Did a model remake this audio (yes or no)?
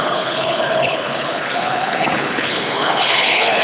yes